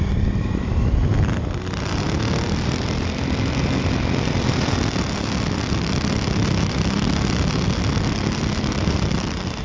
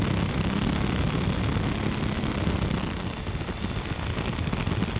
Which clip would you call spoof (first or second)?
first